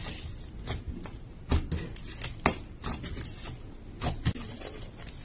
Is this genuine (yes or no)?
yes